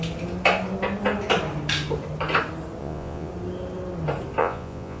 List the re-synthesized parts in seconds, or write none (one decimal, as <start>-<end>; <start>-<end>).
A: 2.8-3.3; 4.4-5.0